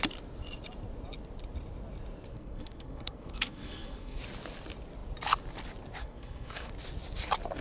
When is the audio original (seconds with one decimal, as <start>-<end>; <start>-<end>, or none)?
0.0-2.3; 4.2-6.0; 6.7-7.6